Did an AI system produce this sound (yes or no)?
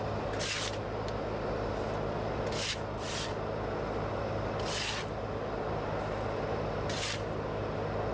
no